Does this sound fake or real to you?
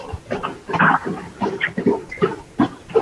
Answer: real